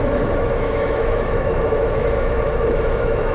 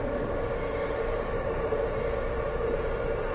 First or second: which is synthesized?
first